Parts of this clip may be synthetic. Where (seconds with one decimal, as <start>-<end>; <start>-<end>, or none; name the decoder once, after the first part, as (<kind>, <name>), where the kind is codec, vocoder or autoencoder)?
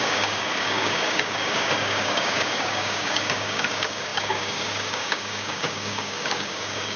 0.0-7.0 (codec, DAC)